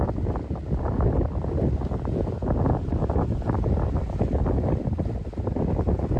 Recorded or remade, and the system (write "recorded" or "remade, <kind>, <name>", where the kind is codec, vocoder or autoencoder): recorded